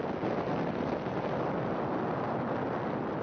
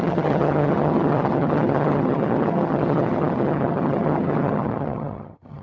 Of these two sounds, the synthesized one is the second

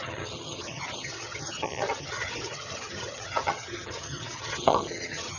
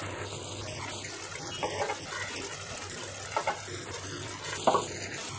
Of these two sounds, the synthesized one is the first